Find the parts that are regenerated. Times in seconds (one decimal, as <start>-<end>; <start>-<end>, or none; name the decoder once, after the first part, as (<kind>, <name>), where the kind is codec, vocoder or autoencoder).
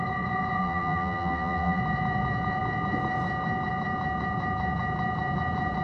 0.6-1.8 (vocoder, BigVGAN v2)